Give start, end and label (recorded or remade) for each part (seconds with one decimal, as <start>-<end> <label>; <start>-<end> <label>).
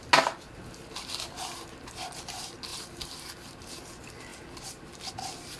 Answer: 0.0-5.6 recorded